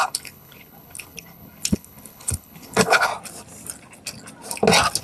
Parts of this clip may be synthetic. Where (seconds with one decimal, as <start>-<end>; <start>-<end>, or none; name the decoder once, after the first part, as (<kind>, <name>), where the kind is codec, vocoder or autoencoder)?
0.0-3.1 (codec, HILCodec)